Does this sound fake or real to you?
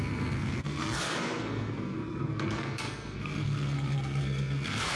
fake